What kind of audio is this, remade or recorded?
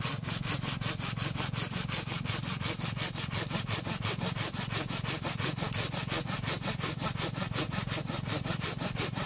recorded